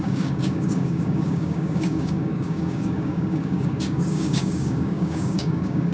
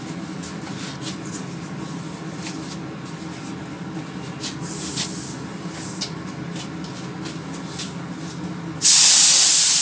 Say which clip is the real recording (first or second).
second